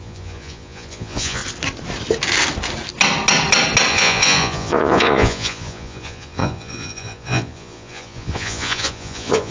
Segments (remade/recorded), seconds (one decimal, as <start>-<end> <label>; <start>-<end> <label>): 0.0-1.4 remade; 1.4-3.9 recorded; 3.9-9.5 remade